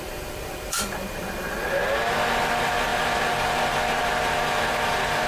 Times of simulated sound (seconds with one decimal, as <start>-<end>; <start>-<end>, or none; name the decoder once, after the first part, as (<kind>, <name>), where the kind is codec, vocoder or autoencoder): 0.0-1.8 (vocoder, BigVGAN v2); 2.4-5.3